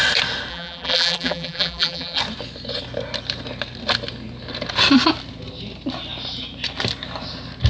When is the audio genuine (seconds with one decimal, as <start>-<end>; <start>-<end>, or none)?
0.0-0.5; 2.2-7.7